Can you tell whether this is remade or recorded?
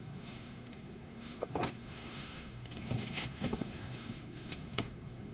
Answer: remade